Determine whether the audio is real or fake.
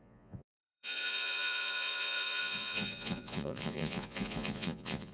fake